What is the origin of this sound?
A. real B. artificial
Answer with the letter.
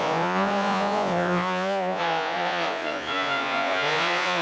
B